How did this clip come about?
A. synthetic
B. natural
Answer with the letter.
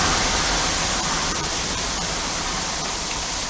A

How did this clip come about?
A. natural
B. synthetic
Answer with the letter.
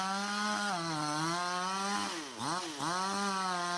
A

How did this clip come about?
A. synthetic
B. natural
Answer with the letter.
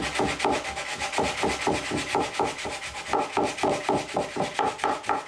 B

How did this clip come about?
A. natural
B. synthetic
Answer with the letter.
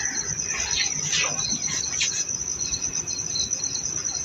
A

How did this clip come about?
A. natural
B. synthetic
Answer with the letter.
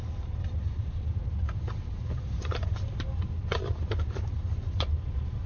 A